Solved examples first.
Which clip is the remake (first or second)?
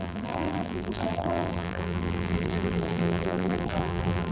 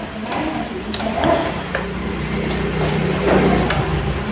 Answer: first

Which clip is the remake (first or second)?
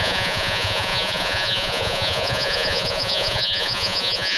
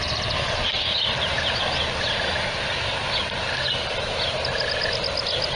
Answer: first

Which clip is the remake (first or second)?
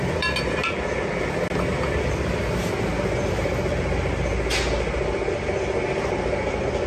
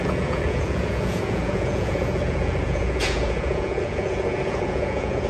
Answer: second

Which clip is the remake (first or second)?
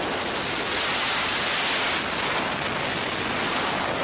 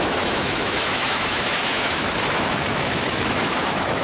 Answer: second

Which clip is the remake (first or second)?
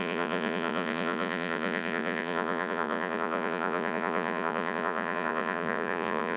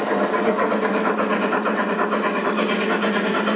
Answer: first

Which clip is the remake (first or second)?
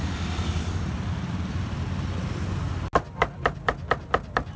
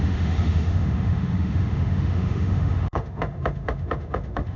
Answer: second